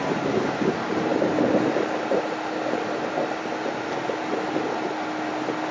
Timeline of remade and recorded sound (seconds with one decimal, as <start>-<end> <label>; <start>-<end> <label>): 0.0-5.7 recorded